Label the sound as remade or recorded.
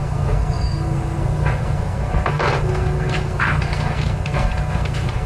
remade